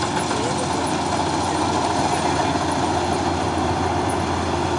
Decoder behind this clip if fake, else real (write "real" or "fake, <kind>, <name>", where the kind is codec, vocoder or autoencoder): real